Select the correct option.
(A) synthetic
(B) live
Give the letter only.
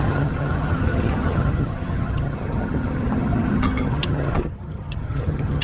A